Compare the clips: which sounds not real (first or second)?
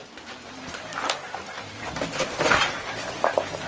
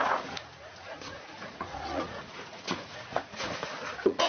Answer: second